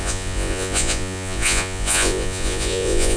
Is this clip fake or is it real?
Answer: fake